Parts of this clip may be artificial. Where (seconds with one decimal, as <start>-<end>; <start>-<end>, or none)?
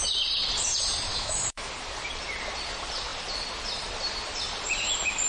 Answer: 1.1-1.7